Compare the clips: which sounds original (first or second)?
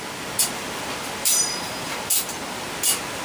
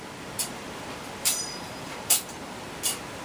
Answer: first